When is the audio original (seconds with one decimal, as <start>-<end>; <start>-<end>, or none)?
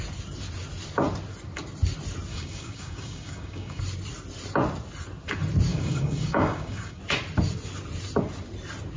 0.0-2.3; 3.8-5.7; 7.0-9.0